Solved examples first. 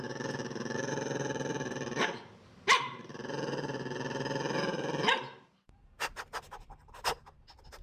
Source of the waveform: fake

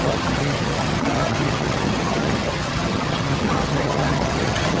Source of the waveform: fake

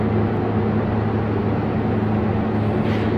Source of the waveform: real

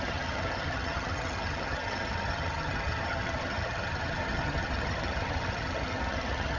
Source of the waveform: fake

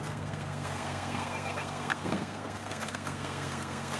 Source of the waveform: fake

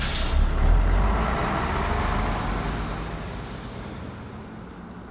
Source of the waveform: real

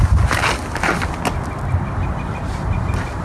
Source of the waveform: real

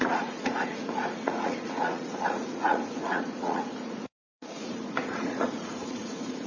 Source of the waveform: fake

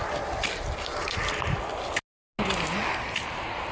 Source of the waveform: real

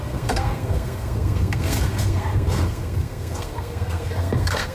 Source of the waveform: fake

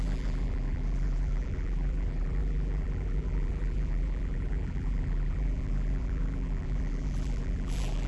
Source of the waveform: fake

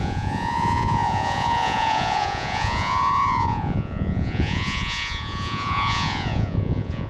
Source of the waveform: fake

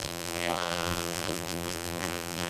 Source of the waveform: fake